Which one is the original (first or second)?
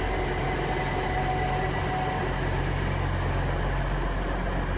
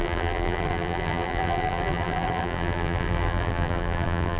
first